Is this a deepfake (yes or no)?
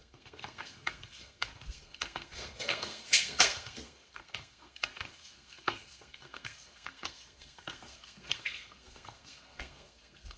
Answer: yes